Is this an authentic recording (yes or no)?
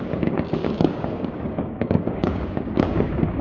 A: no